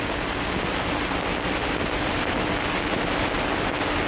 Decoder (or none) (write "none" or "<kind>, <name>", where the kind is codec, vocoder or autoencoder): none